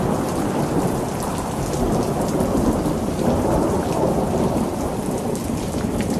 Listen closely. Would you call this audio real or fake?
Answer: fake